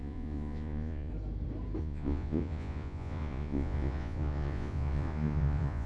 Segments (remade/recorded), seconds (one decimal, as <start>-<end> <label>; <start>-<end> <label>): 0.0-1.1 remade; 1.1-1.8 recorded; 1.8-5.9 remade